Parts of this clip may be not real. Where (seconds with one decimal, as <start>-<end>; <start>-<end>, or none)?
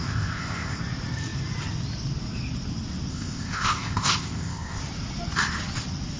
0.0-0.8; 3.1-4.8